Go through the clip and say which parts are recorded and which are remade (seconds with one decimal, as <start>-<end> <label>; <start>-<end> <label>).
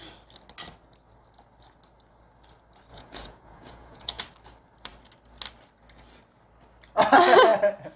0.0-2.9 recorded; 2.9-4.2 remade; 4.2-8.0 recorded